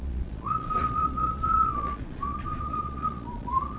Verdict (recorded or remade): remade